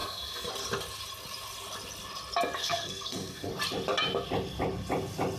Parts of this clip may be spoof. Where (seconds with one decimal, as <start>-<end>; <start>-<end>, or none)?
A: 0.0-0.5; 2.6-3.5